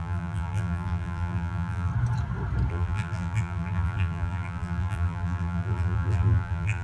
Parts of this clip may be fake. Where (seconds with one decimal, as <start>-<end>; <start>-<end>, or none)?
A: 0.0-1.9; 2.7-6.8